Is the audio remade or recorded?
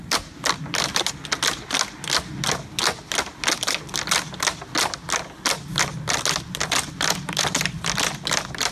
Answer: recorded